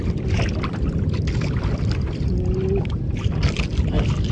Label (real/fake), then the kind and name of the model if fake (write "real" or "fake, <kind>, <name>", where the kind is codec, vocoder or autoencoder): real